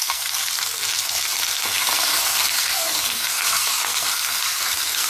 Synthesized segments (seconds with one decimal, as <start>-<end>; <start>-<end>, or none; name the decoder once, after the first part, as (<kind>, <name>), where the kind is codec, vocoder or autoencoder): 0.0-5.1 (codec, SNAC)